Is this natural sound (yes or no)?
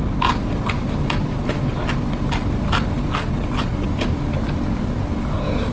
yes